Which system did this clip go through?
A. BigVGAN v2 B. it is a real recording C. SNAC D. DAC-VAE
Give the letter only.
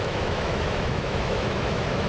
D